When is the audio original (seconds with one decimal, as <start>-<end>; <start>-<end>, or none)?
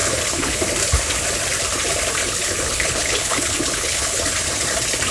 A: 0.6-2.2; 4.2-5.1